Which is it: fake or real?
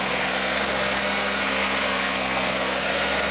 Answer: fake